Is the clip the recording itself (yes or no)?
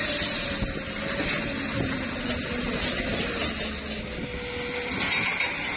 yes